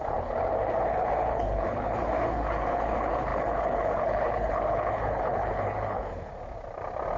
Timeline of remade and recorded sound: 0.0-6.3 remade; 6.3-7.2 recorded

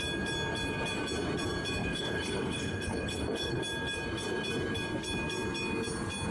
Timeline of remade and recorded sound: 0.0-1.8 recorded; 1.8-3.6 remade; 3.6-6.3 recorded